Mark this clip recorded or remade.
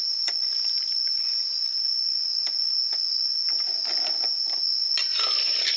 recorded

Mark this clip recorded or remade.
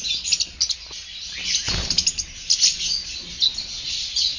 recorded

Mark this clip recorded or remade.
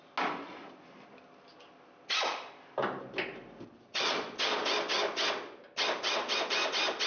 recorded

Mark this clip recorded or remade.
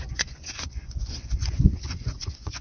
remade